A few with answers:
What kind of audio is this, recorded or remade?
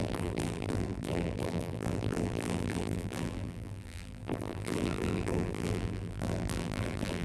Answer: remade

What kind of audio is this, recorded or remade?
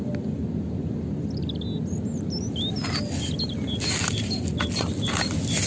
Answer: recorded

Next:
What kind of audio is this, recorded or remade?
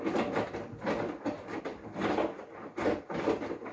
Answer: recorded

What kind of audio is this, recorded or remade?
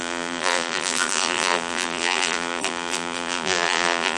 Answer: remade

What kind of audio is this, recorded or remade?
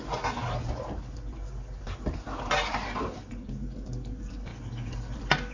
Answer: recorded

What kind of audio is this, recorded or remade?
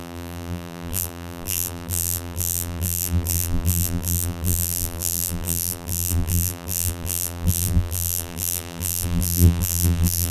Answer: remade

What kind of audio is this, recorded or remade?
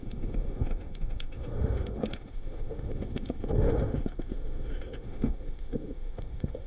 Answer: remade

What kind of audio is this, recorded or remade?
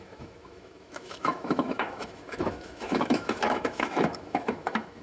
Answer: remade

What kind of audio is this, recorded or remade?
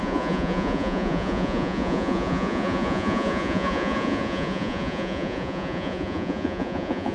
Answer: remade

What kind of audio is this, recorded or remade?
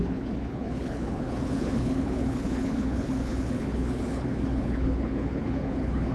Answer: remade